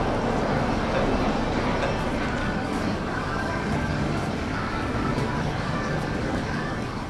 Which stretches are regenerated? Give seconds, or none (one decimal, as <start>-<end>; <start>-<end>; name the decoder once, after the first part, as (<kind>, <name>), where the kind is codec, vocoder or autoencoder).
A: 2.4-7.1 (codec, DAC)